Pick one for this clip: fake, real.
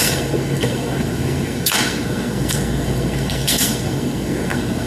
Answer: fake